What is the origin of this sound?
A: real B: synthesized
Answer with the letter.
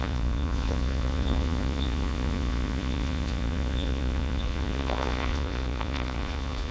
B